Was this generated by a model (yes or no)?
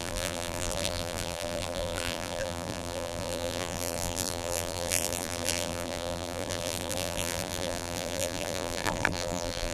yes